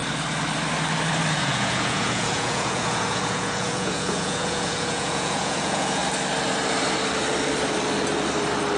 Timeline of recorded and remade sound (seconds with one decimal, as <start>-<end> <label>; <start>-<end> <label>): 0.0-1.3 recorded; 1.3-6.0 remade; 6.0-8.8 recorded